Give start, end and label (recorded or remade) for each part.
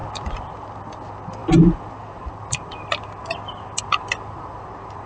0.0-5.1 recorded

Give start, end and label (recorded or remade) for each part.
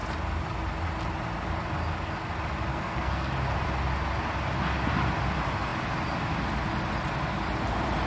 0.0-2.7 recorded; 2.7-3.3 remade; 3.3-8.1 recorded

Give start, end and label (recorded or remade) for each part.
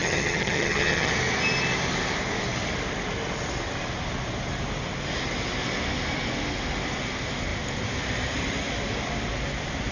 0.0-1.1 remade; 1.1-9.9 recorded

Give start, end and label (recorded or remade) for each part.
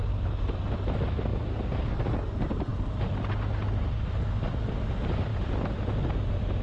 0.0-1.3 recorded; 1.3-2.2 remade; 2.2-5.3 recorded; 5.3-5.9 remade; 5.9-6.6 recorded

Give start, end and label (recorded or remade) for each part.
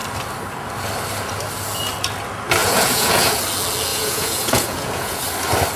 0.0-2.6 recorded; 2.6-3.4 remade; 3.4-3.9 recorded; 3.9-5.2 remade; 5.2-5.8 recorded